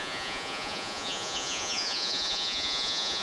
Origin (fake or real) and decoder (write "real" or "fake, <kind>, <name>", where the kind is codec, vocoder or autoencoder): fake, vocoder, Vocos